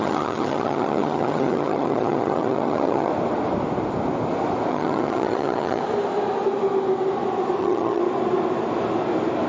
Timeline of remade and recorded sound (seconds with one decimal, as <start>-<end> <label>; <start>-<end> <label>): 0.0-3.1 remade; 3.1-4.7 recorded; 4.7-5.8 remade; 5.8-7.6 recorded; 7.6-8.0 remade; 8.0-9.5 recorded